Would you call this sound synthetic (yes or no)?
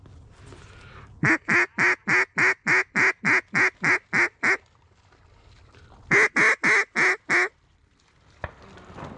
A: no